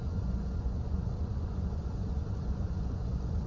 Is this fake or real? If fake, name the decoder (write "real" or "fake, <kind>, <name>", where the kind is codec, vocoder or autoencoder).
fake, vocoder, Vocos